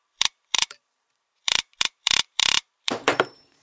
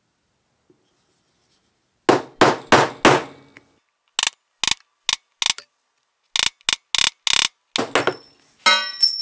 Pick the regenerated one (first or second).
first